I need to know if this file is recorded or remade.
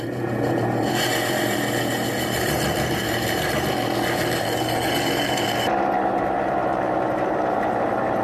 remade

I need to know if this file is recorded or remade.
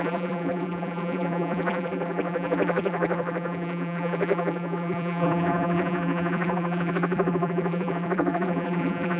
remade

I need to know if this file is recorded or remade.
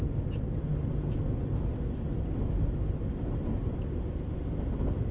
recorded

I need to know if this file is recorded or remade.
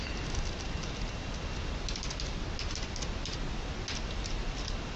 recorded